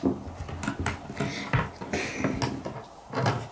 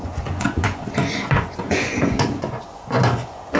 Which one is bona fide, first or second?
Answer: first